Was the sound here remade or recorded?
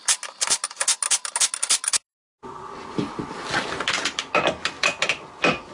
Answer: recorded